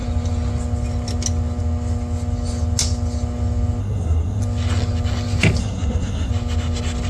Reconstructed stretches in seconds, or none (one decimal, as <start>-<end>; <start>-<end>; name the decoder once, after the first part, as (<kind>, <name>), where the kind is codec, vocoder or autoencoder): 3.8-4.4 (codec, SNAC); 5.6-6.3